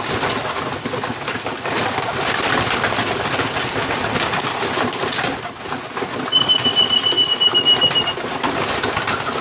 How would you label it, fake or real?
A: real